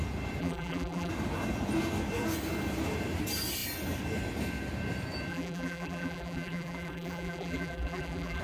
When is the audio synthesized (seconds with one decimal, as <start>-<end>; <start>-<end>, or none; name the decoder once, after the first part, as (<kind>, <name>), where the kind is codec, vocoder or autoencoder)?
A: 0.4-1.1 (vocoder, BigVGAN v2); 5.3-8.4